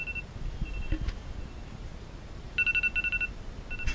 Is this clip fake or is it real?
real